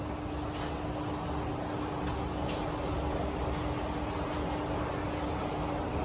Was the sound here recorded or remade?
recorded